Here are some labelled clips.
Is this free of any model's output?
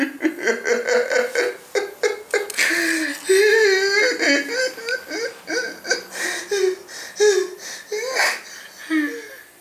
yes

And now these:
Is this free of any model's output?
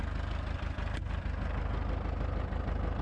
yes